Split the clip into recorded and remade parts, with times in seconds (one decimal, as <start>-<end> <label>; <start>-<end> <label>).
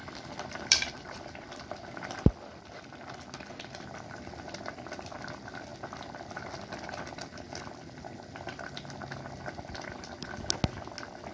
0.0-1.7 remade; 1.7-11.3 recorded